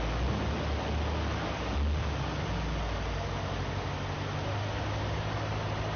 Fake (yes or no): no